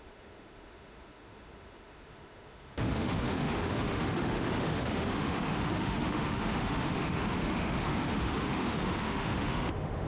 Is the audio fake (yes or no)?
yes